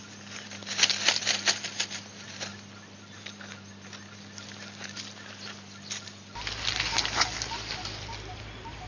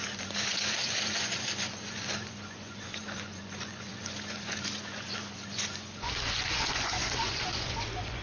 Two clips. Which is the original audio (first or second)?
first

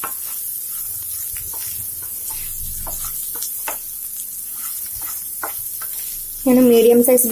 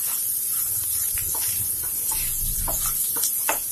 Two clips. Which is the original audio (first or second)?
first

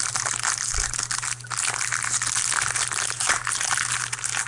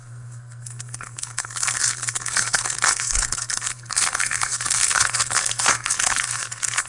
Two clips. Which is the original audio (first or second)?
first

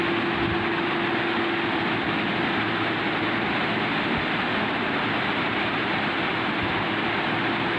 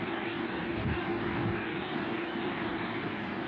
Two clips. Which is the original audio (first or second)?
first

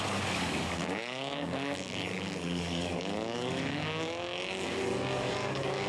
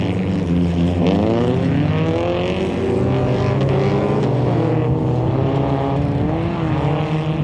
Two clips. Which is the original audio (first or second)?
second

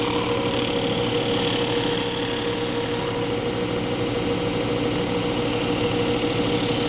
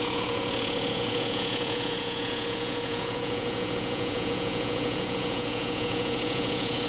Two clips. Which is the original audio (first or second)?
first